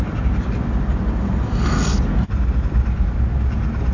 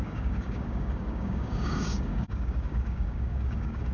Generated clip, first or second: second